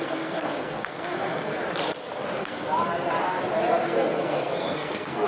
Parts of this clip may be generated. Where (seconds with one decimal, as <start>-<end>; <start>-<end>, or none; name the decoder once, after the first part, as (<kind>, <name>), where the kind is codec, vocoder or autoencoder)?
0.0-1.5 (codec, SNAC); 2.4-2.9; 3.8-5.3